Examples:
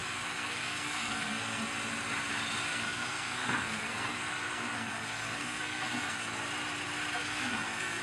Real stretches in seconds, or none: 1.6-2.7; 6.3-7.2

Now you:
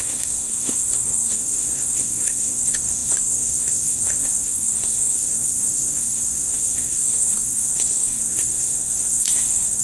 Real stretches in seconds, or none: none